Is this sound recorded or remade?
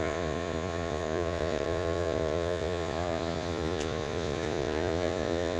remade